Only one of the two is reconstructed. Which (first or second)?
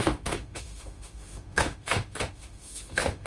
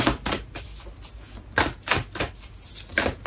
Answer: first